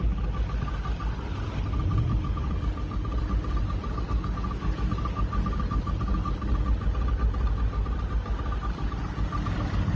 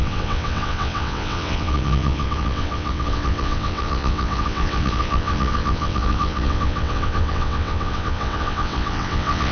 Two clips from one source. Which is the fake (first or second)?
second